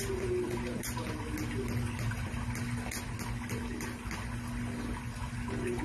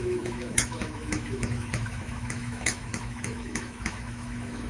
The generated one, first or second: second